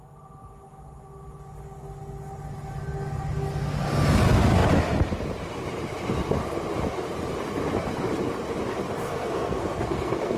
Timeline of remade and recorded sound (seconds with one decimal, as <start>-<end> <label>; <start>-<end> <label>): 0.0-9.0 recorded; 9.0-10.4 remade